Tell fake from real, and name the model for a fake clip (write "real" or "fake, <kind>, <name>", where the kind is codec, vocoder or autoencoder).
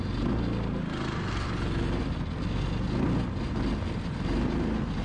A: real